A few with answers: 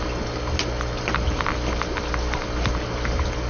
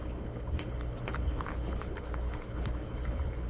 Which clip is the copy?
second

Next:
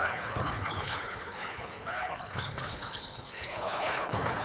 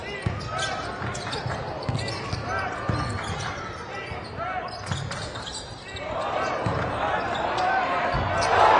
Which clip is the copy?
first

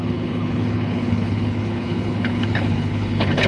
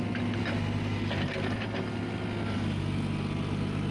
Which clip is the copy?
first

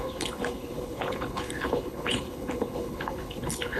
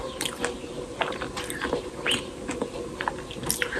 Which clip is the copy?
first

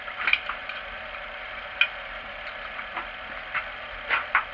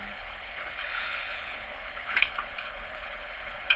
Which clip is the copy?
second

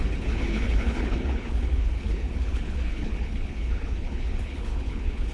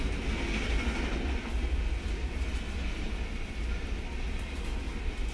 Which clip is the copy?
first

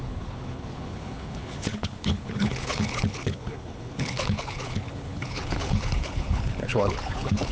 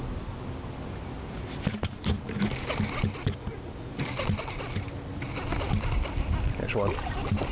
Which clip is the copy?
first